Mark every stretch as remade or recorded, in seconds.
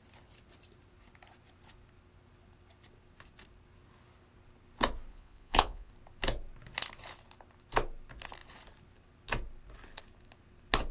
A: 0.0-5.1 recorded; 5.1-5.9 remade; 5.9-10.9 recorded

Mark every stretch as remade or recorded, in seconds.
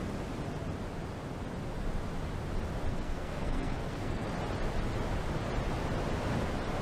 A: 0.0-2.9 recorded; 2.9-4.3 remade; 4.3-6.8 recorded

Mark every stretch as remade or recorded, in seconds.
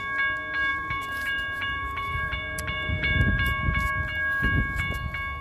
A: 0.0-0.7 recorded; 0.7-3.9 remade; 3.9-5.4 recorded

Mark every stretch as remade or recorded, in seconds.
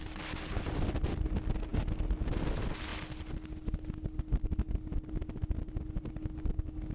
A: 0.0-6.9 recorded